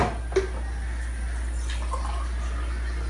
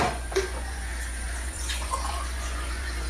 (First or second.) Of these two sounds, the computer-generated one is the second